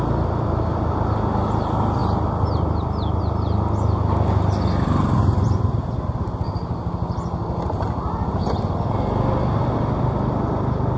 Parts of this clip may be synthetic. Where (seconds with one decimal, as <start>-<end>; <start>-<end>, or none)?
none